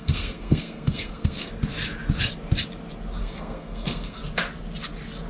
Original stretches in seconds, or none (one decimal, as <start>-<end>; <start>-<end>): 1.5-3.2; 4.2-5.3